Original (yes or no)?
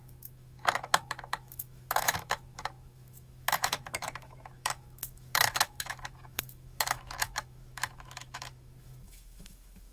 no